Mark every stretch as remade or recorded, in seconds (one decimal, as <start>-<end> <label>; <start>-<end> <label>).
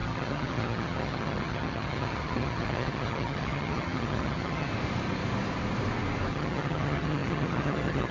0.0-4.7 remade; 4.7-6.3 recorded; 6.3-8.1 remade